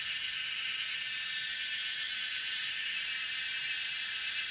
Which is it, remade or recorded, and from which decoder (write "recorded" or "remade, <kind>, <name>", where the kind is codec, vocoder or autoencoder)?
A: recorded